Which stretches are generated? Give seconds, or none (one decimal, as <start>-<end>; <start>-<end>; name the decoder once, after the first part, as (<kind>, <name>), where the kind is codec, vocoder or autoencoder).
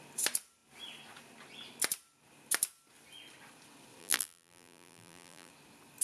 4.0-5.5 (vocoder, BigVGAN v2)